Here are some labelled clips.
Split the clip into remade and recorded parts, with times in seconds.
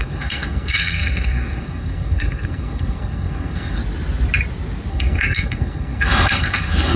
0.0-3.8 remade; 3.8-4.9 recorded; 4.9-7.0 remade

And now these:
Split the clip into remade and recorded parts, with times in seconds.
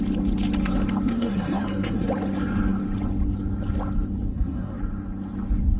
0.0-1.1 recorded; 1.1-2.1 remade; 2.1-4.3 recorded; 4.3-4.8 remade; 4.8-5.8 recorded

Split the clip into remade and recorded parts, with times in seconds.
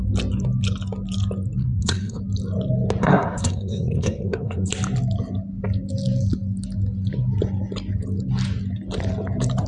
0.0-1.6 recorded; 1.6-2.2 remade; 2.2-3.0 recorded; 3.0-4.7 remade; 4.7-9.7 recorded